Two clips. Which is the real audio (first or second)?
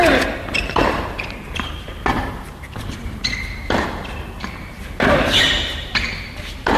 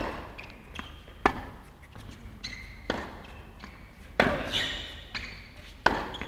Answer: second